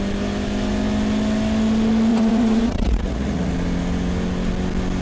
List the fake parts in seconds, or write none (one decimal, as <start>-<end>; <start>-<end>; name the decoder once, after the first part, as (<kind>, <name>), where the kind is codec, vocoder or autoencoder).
2.1-3.5 (vocoder, Vocos)